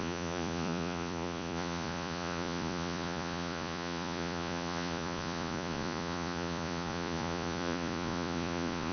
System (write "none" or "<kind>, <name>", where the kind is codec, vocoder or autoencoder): vocoder, Vocos